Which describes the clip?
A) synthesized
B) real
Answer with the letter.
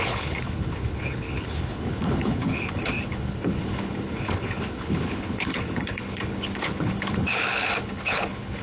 A